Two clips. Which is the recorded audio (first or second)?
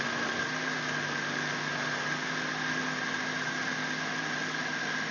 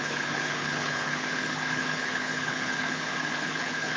first